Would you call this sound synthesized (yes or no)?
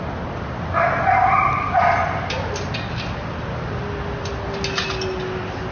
no